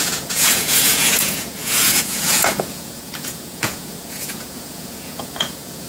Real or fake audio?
fake